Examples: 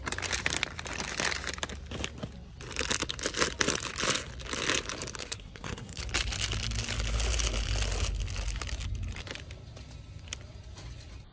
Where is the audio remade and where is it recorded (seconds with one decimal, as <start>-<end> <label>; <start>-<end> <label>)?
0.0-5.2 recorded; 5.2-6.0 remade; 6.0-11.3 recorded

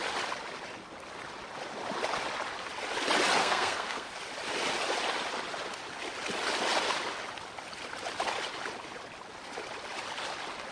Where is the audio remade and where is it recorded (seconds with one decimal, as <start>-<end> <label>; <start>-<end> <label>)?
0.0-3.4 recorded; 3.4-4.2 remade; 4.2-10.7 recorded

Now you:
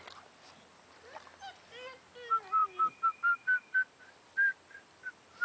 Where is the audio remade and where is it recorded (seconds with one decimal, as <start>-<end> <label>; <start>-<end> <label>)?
0.0-5.4 recorded

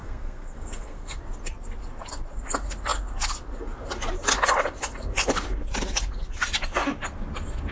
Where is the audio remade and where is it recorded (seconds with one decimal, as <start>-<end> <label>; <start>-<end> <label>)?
0.0-1.2 remade; 1.2-7.7 recorded

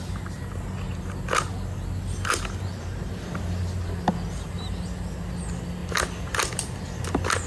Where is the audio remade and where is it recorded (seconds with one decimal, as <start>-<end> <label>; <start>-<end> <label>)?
0.0-7.5 recorded

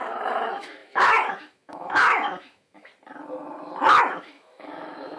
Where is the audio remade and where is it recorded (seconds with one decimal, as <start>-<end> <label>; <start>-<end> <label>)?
0.0-2.9 remade; 2.9-4.1 recorded; 4.1-5.2 remade